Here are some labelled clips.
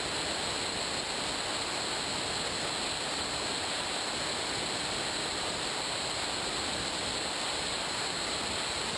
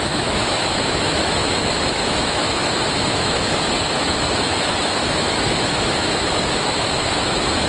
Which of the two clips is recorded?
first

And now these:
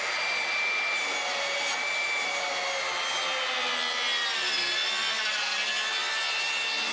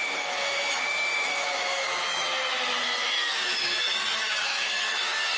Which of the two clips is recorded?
first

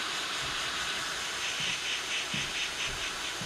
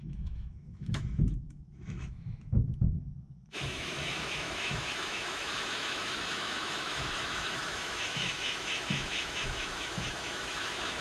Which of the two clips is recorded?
first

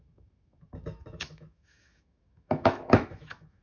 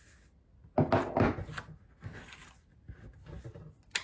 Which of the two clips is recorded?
second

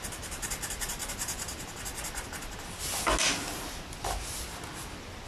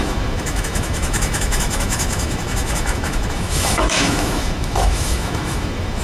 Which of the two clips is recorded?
first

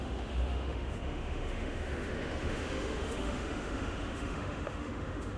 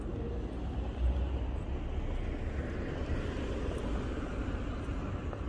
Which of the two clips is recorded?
second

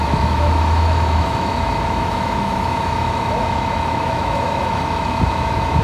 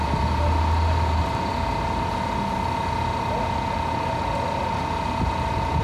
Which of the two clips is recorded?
second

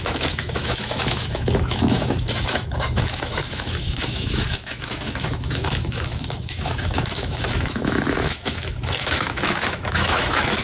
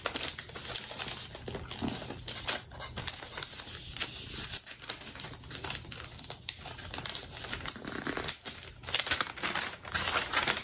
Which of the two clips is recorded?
second